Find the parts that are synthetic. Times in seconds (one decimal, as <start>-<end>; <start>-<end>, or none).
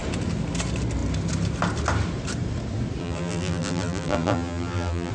3.0-5.1